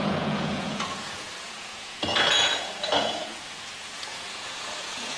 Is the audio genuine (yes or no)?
no